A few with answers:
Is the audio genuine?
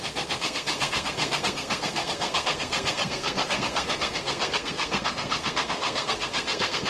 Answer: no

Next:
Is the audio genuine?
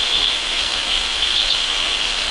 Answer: no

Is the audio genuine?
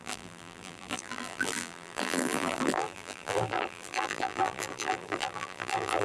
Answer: no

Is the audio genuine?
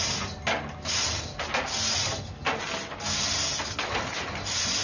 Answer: yes